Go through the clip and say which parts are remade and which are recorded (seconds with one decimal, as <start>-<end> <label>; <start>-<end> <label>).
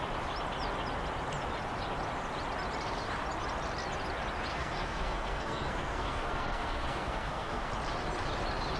0.0-4.5 recorded; 4.5-7.7 remade; 7.7-8.8 recorded